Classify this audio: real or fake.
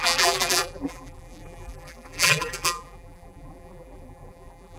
fake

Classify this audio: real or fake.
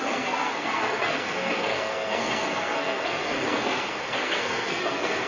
fake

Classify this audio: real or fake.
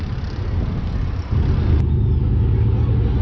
real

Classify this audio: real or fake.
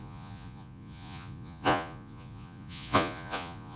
fake